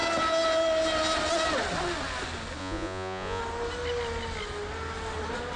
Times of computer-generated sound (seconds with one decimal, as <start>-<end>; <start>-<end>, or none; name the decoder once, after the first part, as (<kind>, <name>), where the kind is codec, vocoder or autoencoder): 2.6-3.4 (vocoder, Vocos)

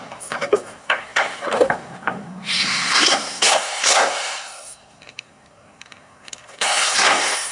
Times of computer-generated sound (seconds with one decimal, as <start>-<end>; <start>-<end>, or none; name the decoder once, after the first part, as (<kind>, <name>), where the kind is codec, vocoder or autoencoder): 0.0-7.5 (codec, SNAC)

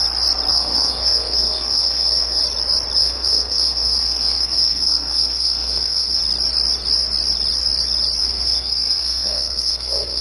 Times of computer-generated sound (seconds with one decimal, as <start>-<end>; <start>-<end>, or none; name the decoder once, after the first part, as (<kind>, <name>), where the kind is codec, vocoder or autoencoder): 0.5-2.4 (codec, SNAC); 3.0-6.2; 8.2-10.2

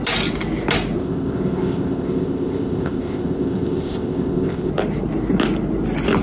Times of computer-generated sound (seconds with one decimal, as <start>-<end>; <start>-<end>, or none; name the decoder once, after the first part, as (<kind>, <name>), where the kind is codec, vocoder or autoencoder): 1.0-4.7 (codec, ZipCodec)

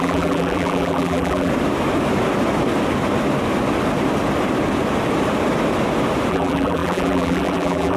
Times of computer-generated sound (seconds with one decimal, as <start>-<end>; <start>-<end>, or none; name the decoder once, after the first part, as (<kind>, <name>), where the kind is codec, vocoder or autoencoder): 0.0-1.5 (vocoder, BigVGAN v2); 6.3-8.0

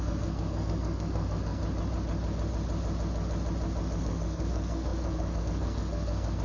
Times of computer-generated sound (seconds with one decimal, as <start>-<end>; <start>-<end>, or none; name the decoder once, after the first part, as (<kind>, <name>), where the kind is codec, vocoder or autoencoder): 0.0-1.6 (codec, SNAC); 4.0-6.4

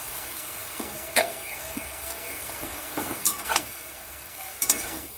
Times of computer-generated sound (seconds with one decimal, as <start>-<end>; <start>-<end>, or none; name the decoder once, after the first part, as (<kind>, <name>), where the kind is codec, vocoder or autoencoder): 0.0-5.2 (codec, SNAC)

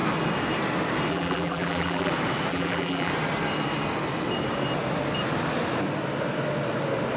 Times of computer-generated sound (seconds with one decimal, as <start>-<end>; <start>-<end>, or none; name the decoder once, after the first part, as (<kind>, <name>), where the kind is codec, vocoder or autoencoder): 1.1-2.1 (vocoder, BigVGAN v2); 2.5-3.1